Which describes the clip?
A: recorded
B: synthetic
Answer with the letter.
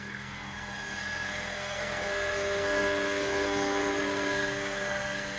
B